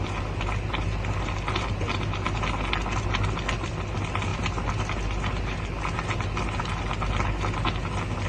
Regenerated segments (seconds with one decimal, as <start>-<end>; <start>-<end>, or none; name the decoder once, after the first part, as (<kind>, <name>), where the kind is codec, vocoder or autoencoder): none